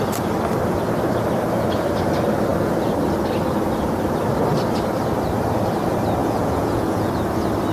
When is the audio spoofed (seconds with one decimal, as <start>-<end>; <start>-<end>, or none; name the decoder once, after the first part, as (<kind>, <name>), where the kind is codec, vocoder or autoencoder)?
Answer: 6.2-7.1 (vocoder, Vocos)

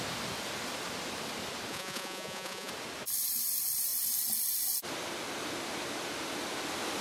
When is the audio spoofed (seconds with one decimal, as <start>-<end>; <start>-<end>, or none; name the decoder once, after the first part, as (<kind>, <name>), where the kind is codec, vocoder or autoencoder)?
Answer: 1.7-2.7 (vocoder, Vocos)

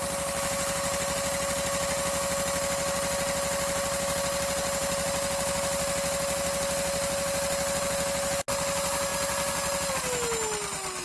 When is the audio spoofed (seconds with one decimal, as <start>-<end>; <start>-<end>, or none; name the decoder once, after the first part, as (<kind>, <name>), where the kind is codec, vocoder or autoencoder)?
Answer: none